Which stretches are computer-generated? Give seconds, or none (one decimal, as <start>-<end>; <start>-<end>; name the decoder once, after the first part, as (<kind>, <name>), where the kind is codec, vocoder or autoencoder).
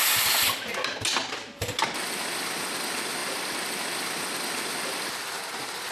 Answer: none